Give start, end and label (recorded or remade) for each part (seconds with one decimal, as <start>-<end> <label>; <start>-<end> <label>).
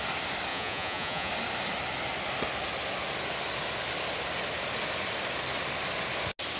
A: 0.0-0.5 recorded; 0.5-1.3 remade; 1.3-6.6 recorded